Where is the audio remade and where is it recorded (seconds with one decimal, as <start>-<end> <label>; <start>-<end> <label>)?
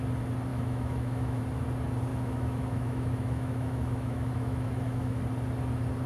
0.0-0.5 recorded; 0.5-1.4 remade; 1.4-2.1 recorded; 2.1-5.2 remade; 5.2-6.1 recorded